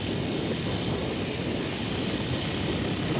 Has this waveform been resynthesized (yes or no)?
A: no